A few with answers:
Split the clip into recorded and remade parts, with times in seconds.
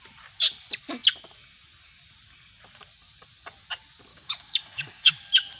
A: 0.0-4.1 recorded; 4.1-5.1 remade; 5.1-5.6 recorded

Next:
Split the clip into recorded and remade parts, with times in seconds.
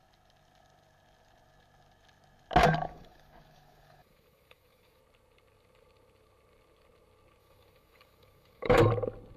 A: 0.0-2.6 recorded; 2.6-5.0 remade; 5.0-7.4 recorded; 7.4-8.9 remade; 8.9-9.4 recorded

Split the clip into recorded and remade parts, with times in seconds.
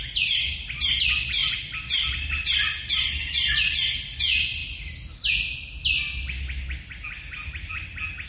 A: 0.0-8.3 recorded